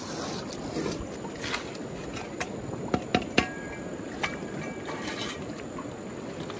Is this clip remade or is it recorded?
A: recorded